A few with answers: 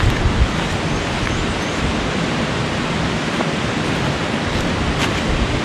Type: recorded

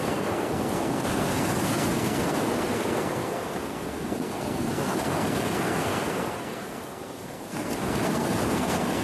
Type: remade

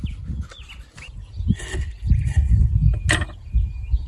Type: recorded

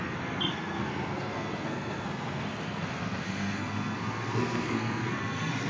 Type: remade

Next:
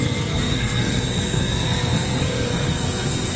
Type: remade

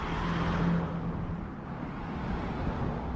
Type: recorded